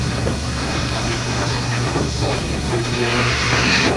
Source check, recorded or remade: remade